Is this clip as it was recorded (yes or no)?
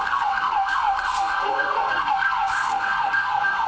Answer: no